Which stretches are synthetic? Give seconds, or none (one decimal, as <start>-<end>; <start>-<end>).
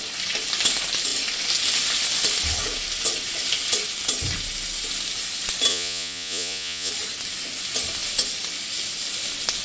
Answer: 5.7-6.9